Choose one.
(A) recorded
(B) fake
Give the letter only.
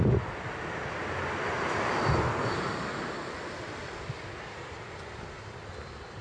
A